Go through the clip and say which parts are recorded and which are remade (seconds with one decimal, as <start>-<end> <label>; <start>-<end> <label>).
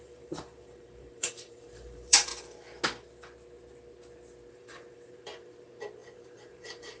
0.0-2.3 remade; 2.3-4.5 recorded; 4.5-7.0 remade